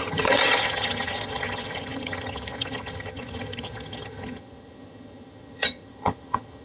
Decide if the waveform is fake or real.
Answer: fake